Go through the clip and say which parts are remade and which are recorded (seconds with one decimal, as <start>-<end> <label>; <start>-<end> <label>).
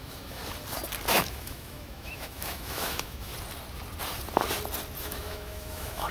0.0-0.4 remade; 0.4-1.1 recorded; 1.1-3.3 remade; 3.3-5.0 recorded; 5.0-6.1 remade